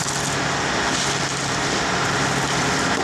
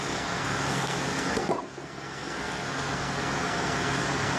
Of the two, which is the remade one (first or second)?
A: second